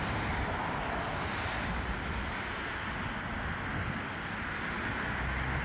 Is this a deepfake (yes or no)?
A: no